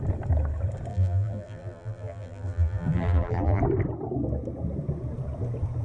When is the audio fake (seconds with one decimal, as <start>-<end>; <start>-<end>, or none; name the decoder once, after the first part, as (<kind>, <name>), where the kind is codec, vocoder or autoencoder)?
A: 0.9-3.6 (vocoder, BigVGAN v2)